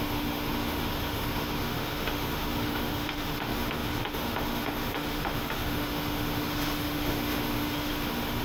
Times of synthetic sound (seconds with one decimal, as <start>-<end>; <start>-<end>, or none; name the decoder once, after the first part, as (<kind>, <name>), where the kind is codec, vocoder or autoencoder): 0.0-8.4 (autoencoder, DAC-VAE)